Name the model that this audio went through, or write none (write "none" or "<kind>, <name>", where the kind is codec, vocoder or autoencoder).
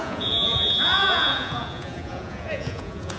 vocoder, Vocos